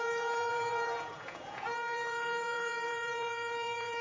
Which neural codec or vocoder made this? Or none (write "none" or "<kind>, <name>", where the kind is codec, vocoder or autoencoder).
vocoder, Vocos